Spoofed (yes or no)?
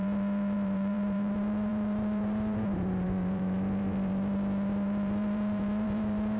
yes